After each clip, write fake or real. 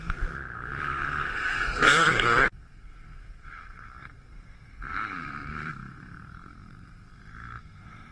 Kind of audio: fake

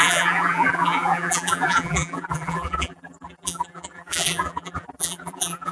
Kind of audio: fake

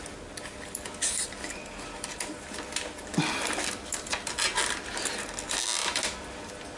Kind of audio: real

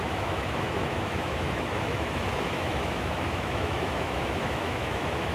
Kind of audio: fake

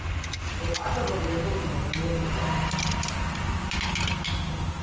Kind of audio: real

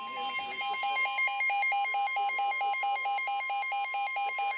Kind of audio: real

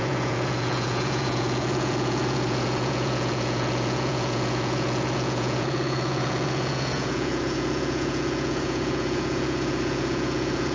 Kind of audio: fake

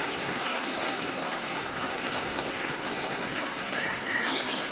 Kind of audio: fake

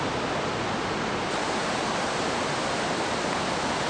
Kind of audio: real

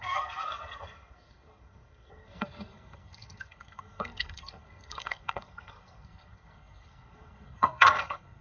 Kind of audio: fake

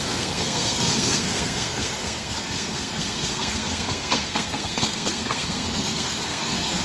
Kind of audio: fake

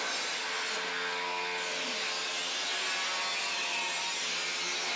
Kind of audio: real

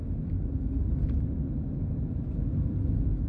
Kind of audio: real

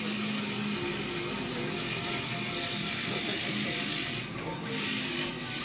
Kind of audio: real